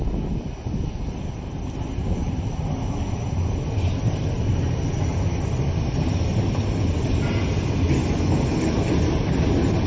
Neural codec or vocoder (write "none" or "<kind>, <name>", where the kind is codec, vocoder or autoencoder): none